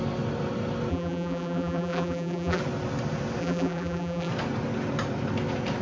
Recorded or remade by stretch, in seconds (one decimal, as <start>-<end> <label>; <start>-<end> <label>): 0.0-0.9 recorded; 0.9-2.6 remade; 2.6-3.4 recorded; 3.4-4.3 remade; 4.3-5.8 recorded